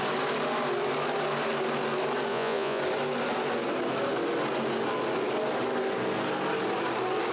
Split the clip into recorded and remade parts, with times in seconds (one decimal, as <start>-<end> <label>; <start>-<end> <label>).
0.0-2.3 recorded; 2.3-2.8 remade; 2.8-7.3 recorded